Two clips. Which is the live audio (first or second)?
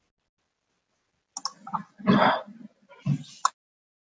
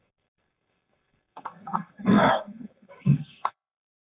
first